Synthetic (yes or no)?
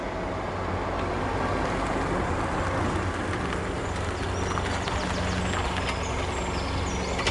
no